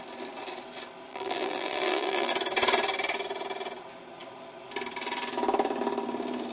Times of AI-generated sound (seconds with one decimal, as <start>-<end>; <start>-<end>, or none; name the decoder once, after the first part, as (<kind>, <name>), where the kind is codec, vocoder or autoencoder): 1.1-2.3 (vocoder, BigVGAN v2)